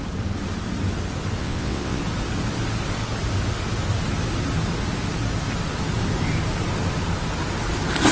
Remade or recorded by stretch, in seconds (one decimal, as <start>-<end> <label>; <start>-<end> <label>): 0.0-1.4 recorded; 1.4-2.0 remade; 2.0-8.1 recorded